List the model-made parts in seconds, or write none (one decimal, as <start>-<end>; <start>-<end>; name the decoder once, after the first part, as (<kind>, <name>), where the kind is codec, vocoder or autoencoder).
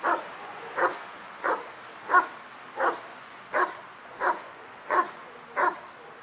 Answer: 0.4-1.5 (vocoder, Vocos); 3.1-5.3